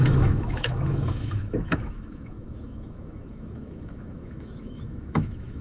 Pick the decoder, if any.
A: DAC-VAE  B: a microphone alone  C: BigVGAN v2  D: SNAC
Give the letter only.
A